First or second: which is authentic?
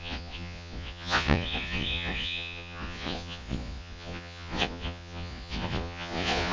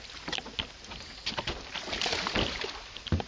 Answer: second